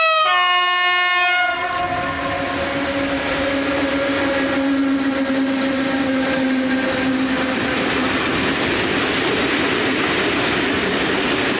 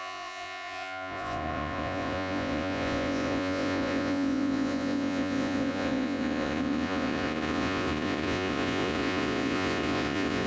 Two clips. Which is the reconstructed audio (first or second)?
second